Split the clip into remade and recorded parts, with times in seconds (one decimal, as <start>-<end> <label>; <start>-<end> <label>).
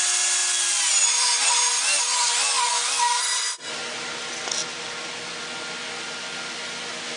0.0-3.2 recorded; 3.2-3.7 remade; 3.7-7.2 recorded